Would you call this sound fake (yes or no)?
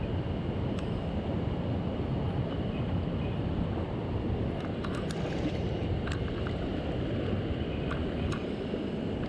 no